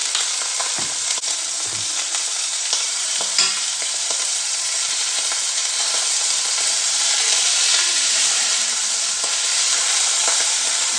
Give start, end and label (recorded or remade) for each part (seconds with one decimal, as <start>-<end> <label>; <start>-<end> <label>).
0.0-1.4 recorded; 1.4-5.6 remade; 5.6-6.9 recorded; 6.9-11.0 remade